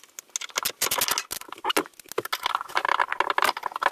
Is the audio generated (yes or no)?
no